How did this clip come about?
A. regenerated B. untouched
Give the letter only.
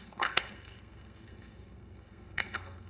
A